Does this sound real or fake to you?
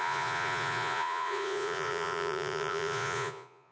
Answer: fake